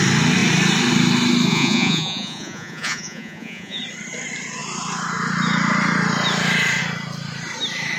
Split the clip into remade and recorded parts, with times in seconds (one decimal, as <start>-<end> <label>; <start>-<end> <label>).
0.0-1.5 recorded; 1.5-3.8 remade; 3.8-8.0 recorded